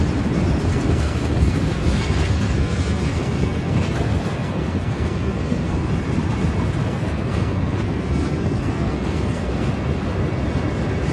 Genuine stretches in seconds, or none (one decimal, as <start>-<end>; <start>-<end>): 0.0-0.7; 5.9-6.8; 9.7-11.1